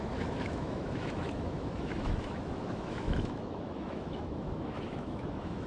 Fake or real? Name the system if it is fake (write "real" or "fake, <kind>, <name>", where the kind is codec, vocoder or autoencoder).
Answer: fake, autoencoder, DAC-VAE